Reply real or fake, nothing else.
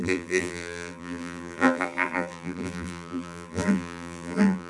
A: fake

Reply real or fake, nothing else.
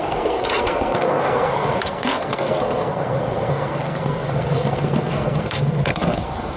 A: fake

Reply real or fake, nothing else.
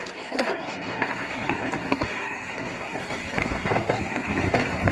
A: fake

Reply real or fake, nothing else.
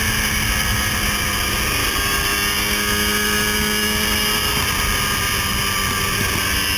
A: real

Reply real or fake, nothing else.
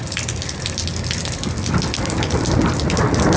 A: real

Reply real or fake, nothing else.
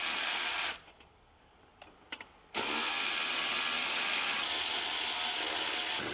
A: real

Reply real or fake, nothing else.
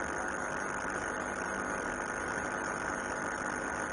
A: real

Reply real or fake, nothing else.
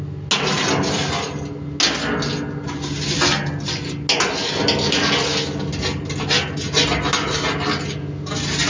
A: real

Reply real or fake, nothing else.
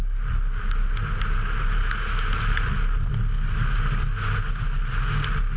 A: real